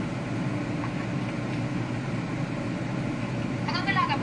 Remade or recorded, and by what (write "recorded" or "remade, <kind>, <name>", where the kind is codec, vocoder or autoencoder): recorded